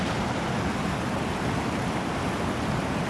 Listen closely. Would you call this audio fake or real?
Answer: real